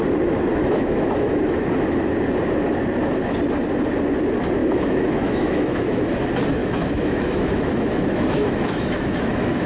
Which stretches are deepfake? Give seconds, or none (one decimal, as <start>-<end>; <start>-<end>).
0.5-1.6; 4.6-6.1; 6.6-9.7